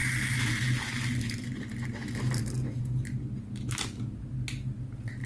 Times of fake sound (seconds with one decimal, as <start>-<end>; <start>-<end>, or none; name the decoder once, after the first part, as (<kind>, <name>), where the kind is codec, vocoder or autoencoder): none